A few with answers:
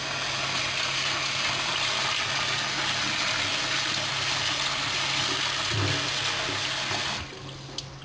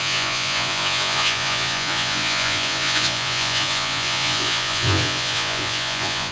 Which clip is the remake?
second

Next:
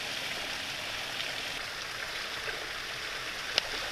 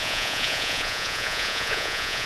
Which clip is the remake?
second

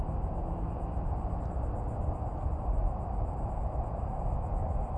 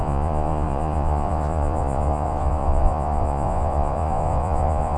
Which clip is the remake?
second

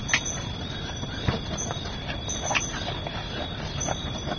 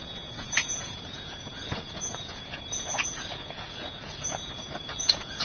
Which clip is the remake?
second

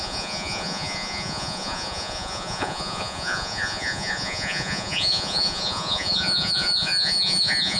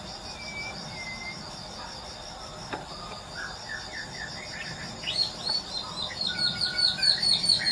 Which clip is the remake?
first